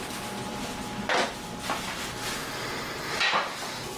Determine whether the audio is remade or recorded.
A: recorded